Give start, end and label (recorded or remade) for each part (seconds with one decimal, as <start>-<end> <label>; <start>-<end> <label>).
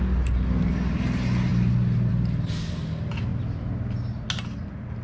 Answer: 0.0-5.0 recorded